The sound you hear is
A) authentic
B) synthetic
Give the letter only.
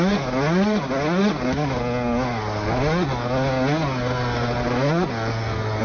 A